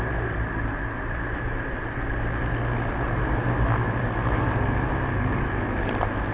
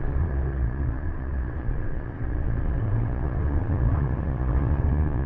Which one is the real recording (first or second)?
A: first